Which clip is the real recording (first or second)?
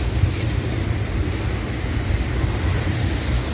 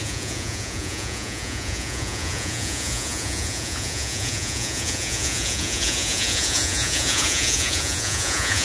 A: first